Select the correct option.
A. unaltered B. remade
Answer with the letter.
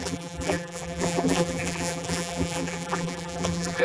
B